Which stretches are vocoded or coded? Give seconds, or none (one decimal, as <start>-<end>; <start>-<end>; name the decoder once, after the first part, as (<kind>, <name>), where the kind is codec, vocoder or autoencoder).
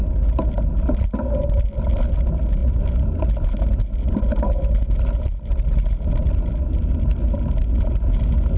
none